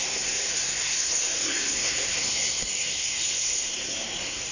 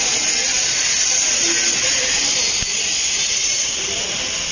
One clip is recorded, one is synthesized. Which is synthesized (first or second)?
first